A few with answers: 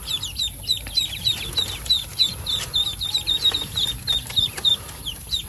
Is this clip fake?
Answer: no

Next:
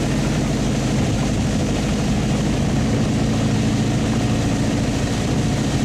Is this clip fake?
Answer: no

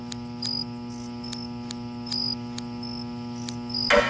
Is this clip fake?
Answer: no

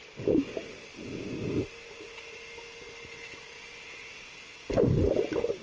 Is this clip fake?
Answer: no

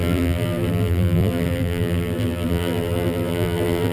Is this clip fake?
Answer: yes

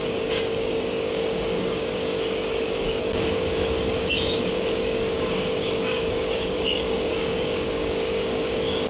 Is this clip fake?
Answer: yes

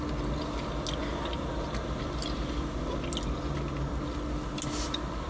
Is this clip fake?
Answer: no